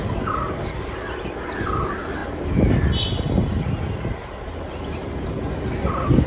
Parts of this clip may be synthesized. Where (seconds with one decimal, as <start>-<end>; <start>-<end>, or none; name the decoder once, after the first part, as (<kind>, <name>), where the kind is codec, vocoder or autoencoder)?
none